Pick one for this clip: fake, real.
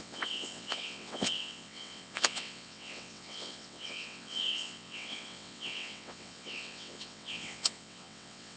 fake